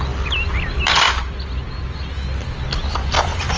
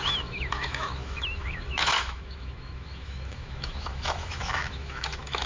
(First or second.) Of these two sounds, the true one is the first